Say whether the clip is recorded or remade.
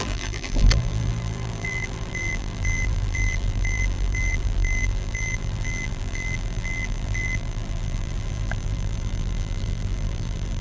remade